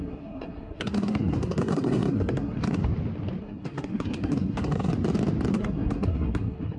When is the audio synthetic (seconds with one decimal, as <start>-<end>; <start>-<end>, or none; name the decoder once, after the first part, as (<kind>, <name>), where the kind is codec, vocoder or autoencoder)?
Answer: 0.0-2.8 (codec, SNAC); 3.4-4.9; 5.5-6.8